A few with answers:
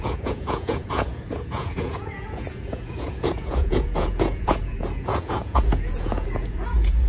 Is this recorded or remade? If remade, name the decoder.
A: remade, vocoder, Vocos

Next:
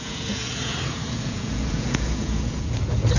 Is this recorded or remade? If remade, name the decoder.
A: remade, vocoder, Vocos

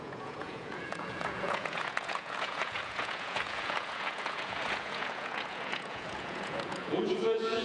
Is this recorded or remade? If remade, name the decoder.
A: remade, vocoder, Vocos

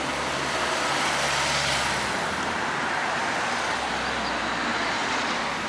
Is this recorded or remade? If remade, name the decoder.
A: recorded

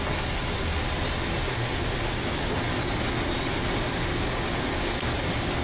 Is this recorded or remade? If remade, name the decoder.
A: recorded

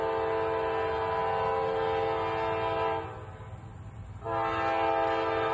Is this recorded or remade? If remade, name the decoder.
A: recorded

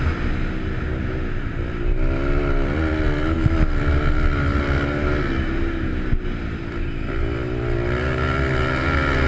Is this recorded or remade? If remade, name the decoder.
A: recorded